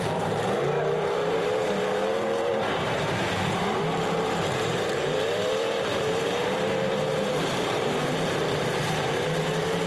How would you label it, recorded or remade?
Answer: remade